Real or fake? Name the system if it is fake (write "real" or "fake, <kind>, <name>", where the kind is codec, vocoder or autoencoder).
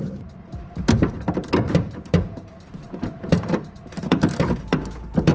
fake, vocoder, BigVGAN v2